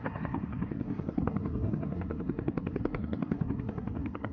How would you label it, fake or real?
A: fake